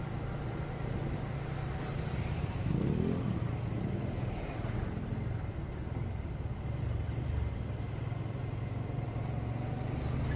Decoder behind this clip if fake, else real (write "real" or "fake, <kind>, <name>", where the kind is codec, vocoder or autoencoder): real